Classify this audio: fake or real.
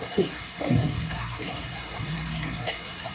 fake